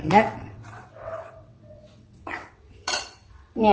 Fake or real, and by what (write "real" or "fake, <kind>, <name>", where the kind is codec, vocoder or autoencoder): fake, vocoder, WaveNeXt